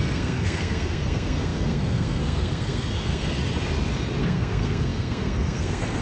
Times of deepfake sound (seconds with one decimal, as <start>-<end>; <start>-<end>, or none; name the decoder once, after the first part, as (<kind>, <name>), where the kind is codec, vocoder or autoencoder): 0.0-3.4 (codec, SNAC); 4.2-6.0